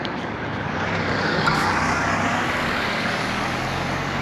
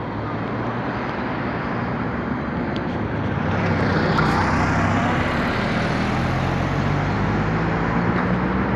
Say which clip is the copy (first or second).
first